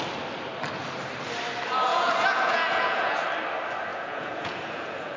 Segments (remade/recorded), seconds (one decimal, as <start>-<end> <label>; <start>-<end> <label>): 0.0-1.9 recorded; 1.9-3.3 remade; 3.3-3.9 recorded; 3.9-5.2 remade